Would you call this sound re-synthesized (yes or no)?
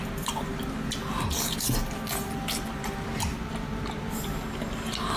no